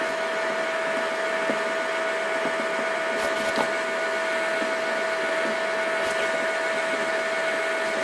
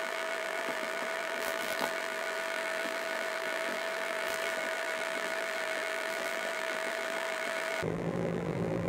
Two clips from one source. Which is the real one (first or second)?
first